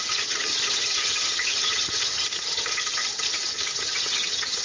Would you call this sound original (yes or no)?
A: no